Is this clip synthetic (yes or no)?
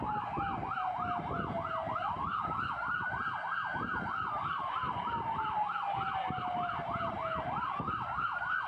no